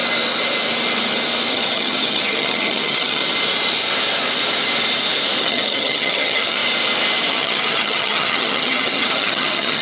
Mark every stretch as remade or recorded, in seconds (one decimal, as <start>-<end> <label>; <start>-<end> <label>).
0.0-1.5 recorded; 1.5-3.2 remade; 3.2-5.4 recorded; 5.4-6.6 remade; 6.6-7.3 recorded; 7.3-9.8 remade